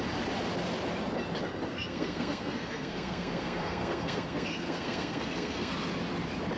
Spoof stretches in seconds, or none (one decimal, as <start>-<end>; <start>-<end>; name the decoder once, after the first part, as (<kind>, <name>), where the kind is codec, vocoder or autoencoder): 1.7-5.7 (codec, SNAC)